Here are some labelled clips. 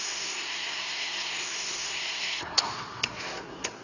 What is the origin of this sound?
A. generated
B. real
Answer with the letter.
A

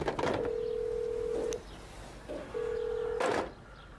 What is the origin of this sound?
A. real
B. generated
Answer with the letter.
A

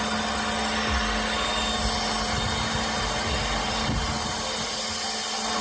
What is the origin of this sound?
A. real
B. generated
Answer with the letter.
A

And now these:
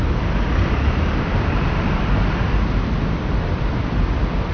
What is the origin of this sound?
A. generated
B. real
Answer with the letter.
B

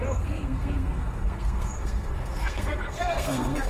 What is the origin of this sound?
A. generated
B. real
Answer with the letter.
A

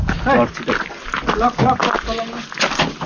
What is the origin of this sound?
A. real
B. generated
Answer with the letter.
A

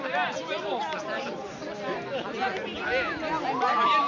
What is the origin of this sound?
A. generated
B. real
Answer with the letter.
B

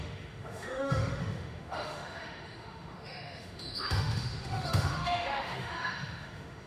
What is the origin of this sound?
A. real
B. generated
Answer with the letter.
B